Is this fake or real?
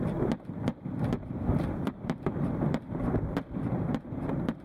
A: fake